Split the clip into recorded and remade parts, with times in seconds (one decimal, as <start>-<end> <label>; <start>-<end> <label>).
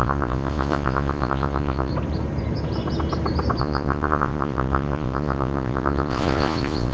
0.0-1.9 remade; 1.9-3.6 recorded; 3.6-6.9 remade